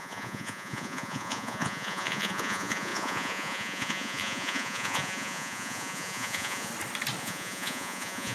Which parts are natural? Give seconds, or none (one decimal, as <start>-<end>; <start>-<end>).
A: 6.7-7.2